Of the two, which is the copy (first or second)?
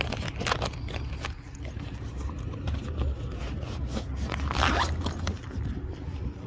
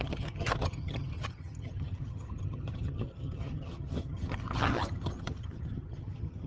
second